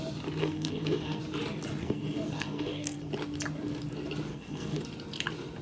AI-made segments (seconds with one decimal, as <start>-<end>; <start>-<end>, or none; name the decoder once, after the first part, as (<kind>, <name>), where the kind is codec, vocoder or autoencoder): 0.4-1.2 (codec, SNAC); 1.8-3.1; 4.3-4.8